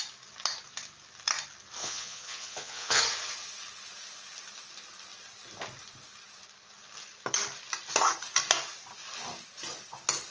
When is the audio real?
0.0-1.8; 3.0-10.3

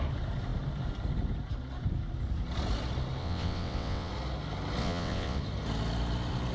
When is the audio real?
0.0-3.2; 4.1-4.8; 5.4-6.5

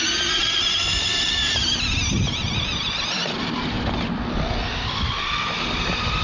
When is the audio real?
0.0-6.2

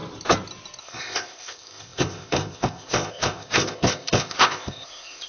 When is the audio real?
0.0-0.8

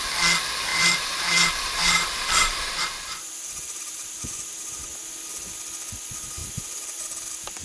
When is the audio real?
0.0-0.7; 4.8-6.4; 7.0-7.6

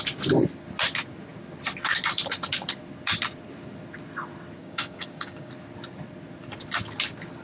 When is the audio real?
0.0-4.6; 5.5-7.4